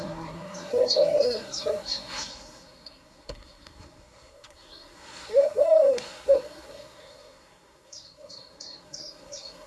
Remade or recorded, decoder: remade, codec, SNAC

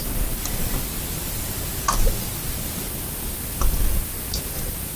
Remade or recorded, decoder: recorded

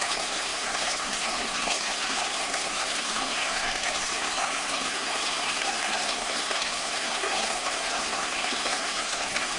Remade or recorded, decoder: remade, codec, SNAC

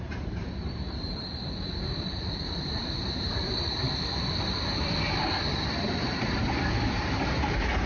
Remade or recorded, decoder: remade, vocoder, BigVGAN v2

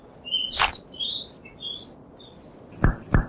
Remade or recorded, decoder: recorded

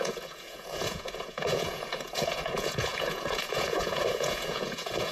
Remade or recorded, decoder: remade, vocoder, Vocos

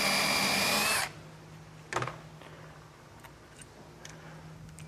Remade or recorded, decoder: recorded